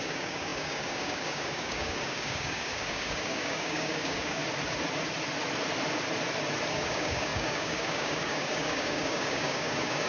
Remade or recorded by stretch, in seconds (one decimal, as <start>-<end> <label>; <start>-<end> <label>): 0.0-4.4 remade; 4.4-6.7 recorded; 6.7-10.1 remade